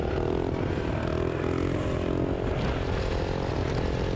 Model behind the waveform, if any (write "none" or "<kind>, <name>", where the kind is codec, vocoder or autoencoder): none